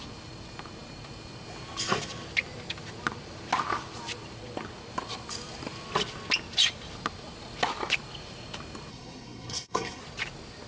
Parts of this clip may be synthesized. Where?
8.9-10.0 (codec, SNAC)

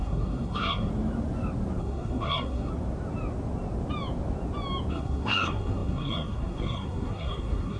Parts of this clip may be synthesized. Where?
0.0-0.9 (codec, SNAC); 1.8-2.7; 4.9-7.8

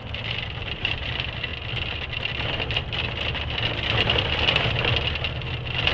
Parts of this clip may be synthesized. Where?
none

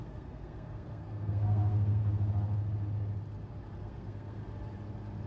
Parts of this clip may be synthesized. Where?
0.0-2.0 (codec, SNAC); 3.8-4.4

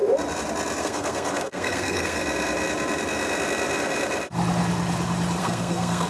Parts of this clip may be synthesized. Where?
0.8-2.2 (codec, SNAC); 5.4-6.1